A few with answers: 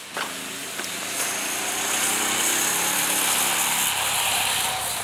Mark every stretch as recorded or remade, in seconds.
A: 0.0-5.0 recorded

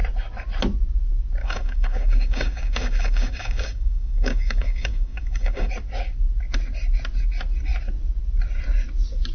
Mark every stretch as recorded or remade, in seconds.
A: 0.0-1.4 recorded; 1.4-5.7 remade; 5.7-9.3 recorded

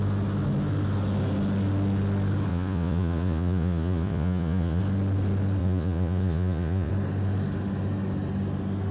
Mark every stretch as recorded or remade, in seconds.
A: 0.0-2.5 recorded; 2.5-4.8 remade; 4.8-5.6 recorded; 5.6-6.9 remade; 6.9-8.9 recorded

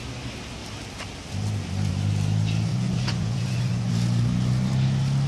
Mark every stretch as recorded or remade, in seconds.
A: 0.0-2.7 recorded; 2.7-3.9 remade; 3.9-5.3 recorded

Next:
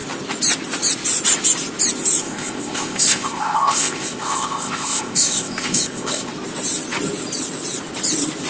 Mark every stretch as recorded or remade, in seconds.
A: 0.0-2.2 recorded; 2.2-6.3 remade; 6.3-8.5 recorded

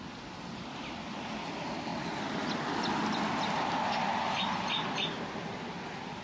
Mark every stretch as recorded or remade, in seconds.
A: 0.0-6.2 recorded

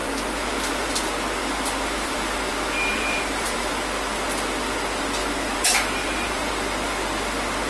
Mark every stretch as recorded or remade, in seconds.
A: 0.0-0.9 remade; 0.9-1.4 recorded; 1.4-2.5 remade; 2.5-2.9 recorded; 2.9-3.7 remade; 3.7-5.2 recorded; 5.2-6.5 remade; 6.5-7.7 recorded